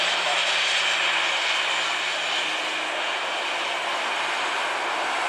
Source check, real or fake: real